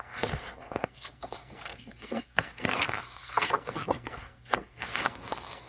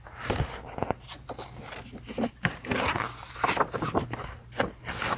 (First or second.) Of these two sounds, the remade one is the first